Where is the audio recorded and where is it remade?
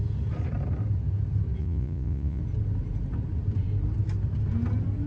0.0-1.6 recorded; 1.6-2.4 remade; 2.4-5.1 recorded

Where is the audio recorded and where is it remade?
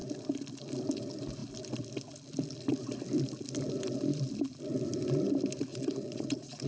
0.0-5.7 recorded; 5.7-6.7 remade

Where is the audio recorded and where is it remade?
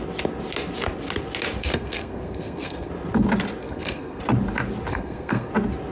0.0-1.6 recorded; 1.6-2.9 remade; 2.9-3.6 recorded; 3.6-4.2 remade; 4.2-4.9 recorded; 4.9-5.5 remade; 5.5-5.9 recorded